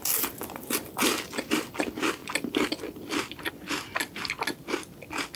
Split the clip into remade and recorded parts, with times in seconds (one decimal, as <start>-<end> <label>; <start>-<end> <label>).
0.0-2.2 recorded; 2.2-3.5 remade; 3.5-5.4 recorded